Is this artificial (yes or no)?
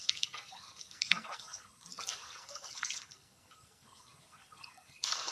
yes